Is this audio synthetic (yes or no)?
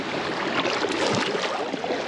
no